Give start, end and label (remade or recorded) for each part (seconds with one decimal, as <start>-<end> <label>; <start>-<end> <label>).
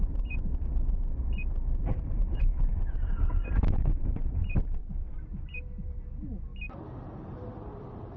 0.0-0.5 remade; 0.5-1.8 recorded; 1.8-8.2 remade